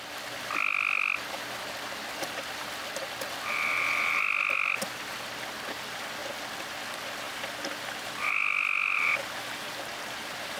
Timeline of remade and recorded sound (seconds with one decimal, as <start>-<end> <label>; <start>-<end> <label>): 0.0-6.2 remade; 6.2-6.7 recorded; 6.7-10.6 remade